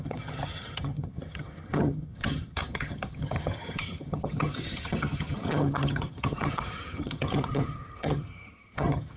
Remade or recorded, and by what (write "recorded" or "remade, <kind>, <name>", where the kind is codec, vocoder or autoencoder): remade, vocoder, HiFi-GAN